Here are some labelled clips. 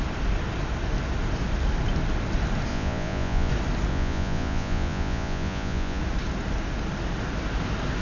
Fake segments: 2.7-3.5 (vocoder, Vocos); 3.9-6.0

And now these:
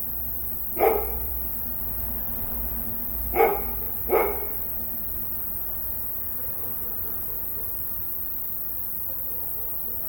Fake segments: 0.4-1.3 (vocoder, BigVGAN v2); 4.2-8.5

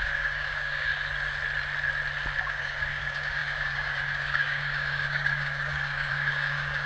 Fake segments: 0.0-0.9 (codec, DAC); 2.4-6.9

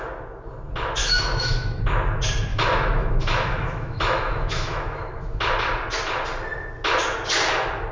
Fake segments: 1.0-1.8 (autoencoder, DAC-VAE); 2.5-5.4

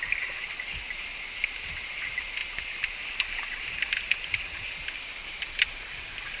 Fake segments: none